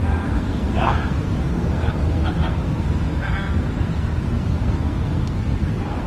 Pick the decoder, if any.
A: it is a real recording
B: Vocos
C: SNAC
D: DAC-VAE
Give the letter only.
C